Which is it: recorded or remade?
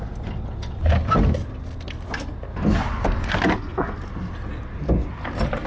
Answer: recorded